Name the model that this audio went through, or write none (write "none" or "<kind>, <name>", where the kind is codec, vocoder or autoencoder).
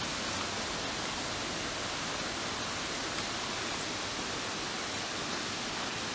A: none